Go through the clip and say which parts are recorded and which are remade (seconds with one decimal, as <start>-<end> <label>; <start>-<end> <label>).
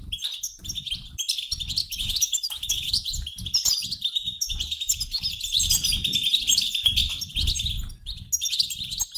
0.0-1.8 recorded; 1.8-2.9 remade; 2.9-9.2 recorded